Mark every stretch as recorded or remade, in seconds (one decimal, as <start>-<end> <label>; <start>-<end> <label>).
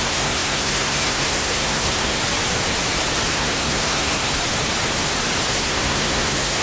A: 0.0-2.2 remade; 2.2-3.3 recorded; 3.3-4.3 remade; 4.3-5.5 recorded; 5.5-6.6 remade